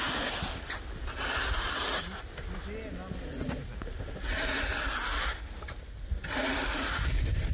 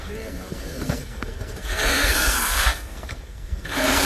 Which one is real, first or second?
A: first